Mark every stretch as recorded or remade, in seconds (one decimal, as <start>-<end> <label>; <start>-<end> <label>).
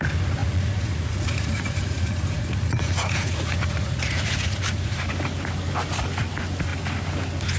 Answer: 0.0-0.4 recorded; 0.4-5.0 remade; 5.0-7.6 recorded